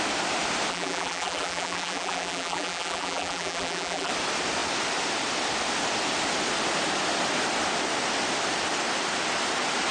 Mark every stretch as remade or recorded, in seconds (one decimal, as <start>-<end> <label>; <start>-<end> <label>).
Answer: 0.0-0.7 recorded; 0.7-4.1 remade; 4.1-9.9 recorded

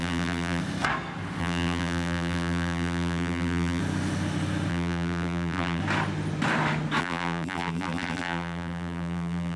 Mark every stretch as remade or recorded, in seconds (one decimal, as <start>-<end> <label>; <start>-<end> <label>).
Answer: 0.0-0.6 remade; 0.6-1.4 recorded; 1.4-3.8 remade; 3.8-4.7 recorded; 4.7-5.8 remade; 5.8-7.0 recorded; 7.0-9.6 remade

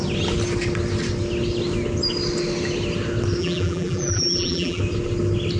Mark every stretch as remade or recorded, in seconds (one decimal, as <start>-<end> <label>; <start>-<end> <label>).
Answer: 0.0-3.4 recorded; 3.4-4.8 remade; 4.8-5.6 recorded

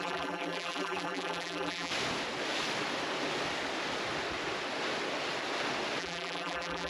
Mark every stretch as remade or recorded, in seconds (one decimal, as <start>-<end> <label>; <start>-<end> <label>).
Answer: 0.0-1.9 remade; 1.9-6.0 recorded; 6.0-6.9 remade

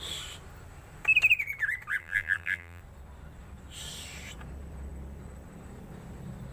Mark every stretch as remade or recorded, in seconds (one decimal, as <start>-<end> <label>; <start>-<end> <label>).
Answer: 0.0-2.0 recorded; 2.0-2.8 remade; 2.8-6.5 recorded

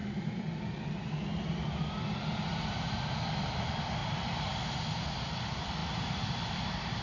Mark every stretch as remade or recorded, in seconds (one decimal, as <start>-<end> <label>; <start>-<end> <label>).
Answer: 0.0-0.5 remade; 0.5-4.0 recorded; 4.0-4.8 remade; 4.8-5.8 recorded; 5.8-6.5 remade; 6.5-7.0 recorded

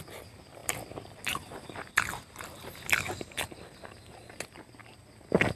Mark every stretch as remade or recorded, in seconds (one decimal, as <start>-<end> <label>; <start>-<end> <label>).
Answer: 0.0-0.6 recorded; 0.6-2.7 remade; 2.7-5.6 recorded

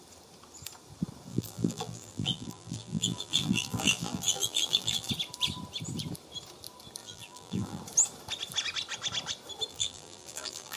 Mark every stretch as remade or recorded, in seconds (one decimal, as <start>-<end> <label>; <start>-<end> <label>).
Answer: 0.0-1.3 recorded; 1.3-5.1 remade; 5.1-7.0 recorded; 7.0-7.8 remade; 7.8-9.7 recorded; 9.7-10.8 remade